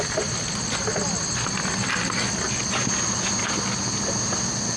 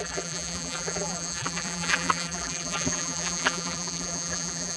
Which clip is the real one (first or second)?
first